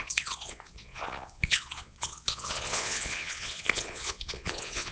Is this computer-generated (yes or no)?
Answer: yes